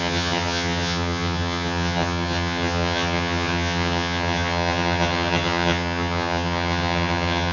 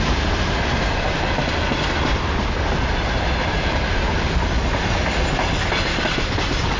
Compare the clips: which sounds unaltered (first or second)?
second